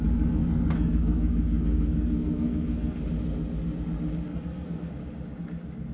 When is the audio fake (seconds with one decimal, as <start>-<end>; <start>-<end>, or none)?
0.4-3.0; 4.3-4.9